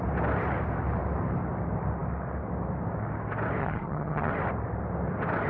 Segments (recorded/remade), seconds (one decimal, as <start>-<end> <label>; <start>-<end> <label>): 0.0-3.6 recorded; 3.6-4.3 remade; 4.3-5.5 recorded